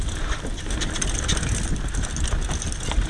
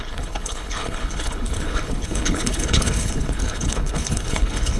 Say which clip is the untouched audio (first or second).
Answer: first